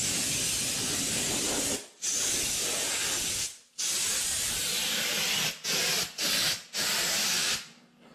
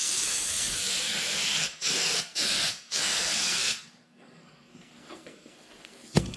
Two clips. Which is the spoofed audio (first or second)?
second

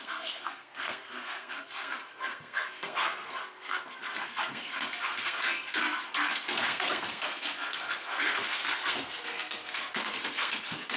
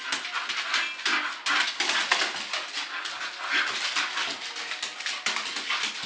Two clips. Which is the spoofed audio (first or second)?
first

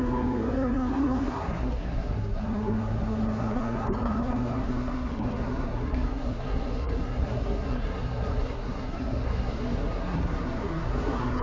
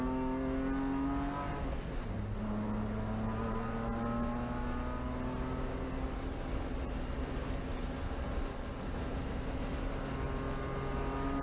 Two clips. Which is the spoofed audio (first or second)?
first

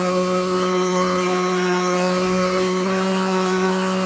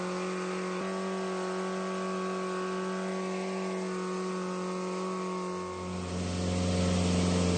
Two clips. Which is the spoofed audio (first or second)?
first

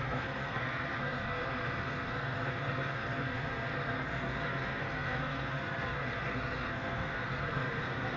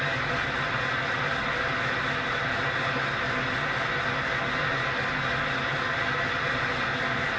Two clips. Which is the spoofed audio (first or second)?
first